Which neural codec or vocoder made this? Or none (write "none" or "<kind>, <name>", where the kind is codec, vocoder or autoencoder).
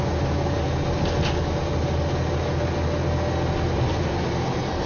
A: none